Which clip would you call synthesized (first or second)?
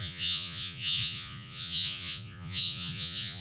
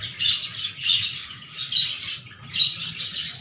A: first